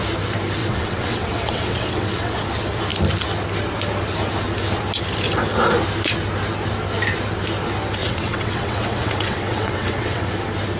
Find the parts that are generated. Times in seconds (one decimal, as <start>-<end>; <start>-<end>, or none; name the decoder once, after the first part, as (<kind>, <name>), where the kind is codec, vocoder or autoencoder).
0.6-2.3 (vocoder, WaveNeXt); 8.0-10.3